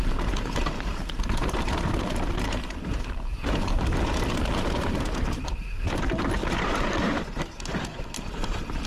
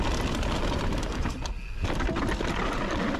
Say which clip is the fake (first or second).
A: first